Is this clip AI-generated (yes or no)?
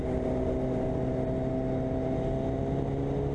no